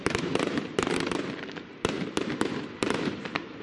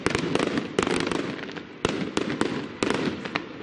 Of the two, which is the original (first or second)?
second